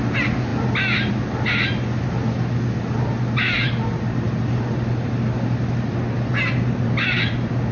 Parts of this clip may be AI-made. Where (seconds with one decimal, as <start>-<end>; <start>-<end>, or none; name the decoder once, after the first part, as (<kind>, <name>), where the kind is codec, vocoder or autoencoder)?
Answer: none

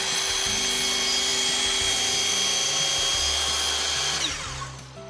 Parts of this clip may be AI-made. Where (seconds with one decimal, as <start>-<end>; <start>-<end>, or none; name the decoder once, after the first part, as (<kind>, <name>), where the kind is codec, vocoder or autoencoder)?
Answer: none

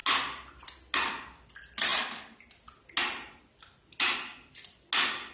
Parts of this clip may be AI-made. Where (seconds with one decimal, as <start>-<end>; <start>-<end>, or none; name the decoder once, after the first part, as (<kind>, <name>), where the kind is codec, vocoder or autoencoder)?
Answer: none

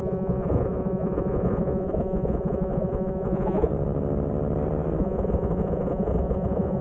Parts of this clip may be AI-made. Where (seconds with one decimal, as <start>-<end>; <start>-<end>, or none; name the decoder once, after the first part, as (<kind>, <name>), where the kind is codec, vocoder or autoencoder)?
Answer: 0.0-3.7 (vocoder, Vocos); 5.0-6.8

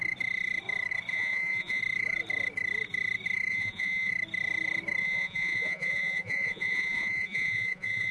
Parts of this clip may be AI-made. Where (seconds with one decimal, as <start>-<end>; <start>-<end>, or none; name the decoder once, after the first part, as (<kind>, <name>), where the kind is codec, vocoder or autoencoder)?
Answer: 1.1-1.8 (vocoder, Vocos); 3.5-4.1; 5.0-8.1

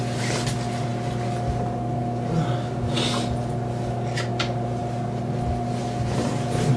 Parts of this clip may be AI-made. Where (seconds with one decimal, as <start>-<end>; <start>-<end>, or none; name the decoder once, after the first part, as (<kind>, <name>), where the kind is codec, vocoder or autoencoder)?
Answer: none

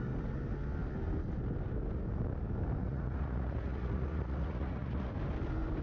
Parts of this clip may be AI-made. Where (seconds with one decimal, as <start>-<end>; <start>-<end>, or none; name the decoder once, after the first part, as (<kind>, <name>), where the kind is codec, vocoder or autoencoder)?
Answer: 2.8-5.1 (vocoder, Vocos)